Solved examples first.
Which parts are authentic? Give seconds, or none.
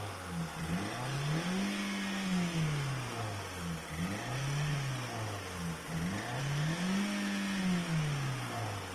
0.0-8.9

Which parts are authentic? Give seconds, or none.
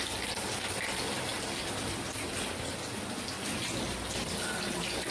0.0-5.1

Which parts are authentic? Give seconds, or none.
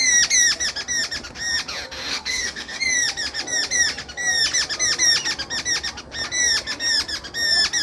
0.0-2.1; 2.8-7.8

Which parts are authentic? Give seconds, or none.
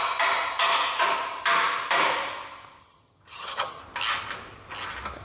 0.0-2.8; 3.8-5.2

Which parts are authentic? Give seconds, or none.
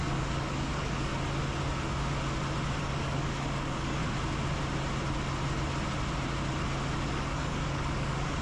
1.1-2.8; 4.0-7.1